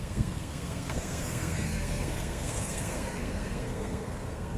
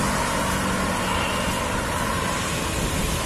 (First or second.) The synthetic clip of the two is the first